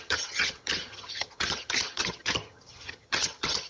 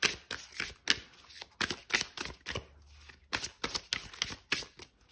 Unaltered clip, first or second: second